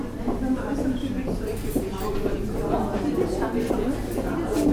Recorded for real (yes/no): yes